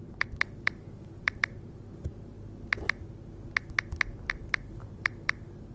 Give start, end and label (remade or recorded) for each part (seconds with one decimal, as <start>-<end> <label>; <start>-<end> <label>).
0.0-2.1 remade; 2.1-4.3 recorded; 4.3-5.7 remade